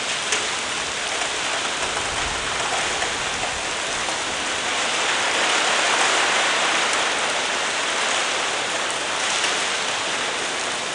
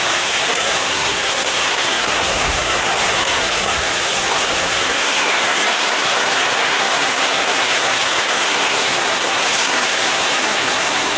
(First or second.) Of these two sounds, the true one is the first